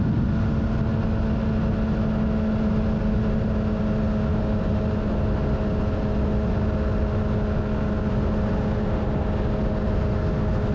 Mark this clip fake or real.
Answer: real